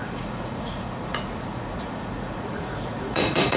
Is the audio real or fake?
fake